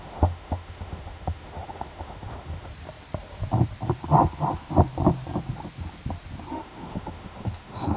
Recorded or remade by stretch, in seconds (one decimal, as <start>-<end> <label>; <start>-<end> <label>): 0.0-2.7 remade; 2.7-6.5 recorded; 6.5-8.0 remade